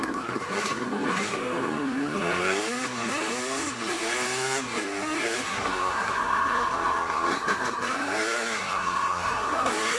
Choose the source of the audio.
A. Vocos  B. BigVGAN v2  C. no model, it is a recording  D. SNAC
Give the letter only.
D